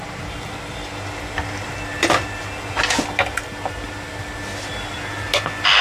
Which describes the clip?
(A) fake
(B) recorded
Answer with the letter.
B